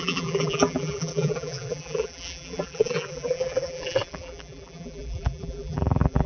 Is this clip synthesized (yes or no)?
yes